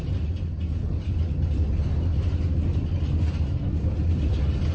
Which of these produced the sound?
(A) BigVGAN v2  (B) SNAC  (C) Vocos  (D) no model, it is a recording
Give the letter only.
D